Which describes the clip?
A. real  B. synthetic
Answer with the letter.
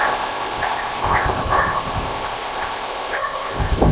B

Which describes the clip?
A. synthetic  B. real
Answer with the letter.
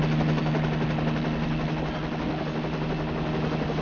B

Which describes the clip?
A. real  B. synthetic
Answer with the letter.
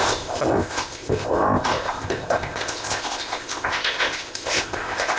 B